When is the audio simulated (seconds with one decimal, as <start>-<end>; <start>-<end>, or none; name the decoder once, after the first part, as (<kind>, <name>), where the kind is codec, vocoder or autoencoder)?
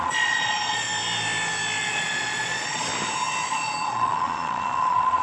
0.0-0.9 (vocoder, Vocos); 1.8-2.9; 3.5-5.2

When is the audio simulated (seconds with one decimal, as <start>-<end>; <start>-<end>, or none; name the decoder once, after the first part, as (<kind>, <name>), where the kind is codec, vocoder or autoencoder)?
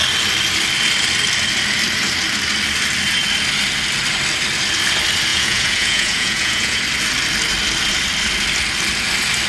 5.3-6.8 (vocoder, Vocos)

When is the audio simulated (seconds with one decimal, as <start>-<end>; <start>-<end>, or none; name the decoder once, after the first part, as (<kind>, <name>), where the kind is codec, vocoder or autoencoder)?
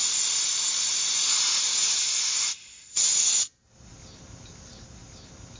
0.0-0.9 (vocoder, BigVGAN v2)